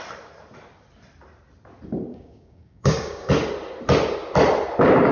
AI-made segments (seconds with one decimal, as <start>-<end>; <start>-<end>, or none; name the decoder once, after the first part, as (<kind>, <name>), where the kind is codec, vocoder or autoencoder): 2.1-3.3 (codec, DAC)